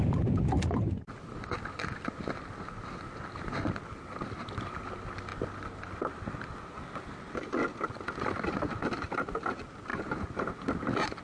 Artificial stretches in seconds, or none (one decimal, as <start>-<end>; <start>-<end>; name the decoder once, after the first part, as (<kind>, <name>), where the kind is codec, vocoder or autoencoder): 9.9-10.5 (vocoder, BigVGAN v2)